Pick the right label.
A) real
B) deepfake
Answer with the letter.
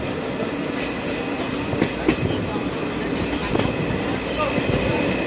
A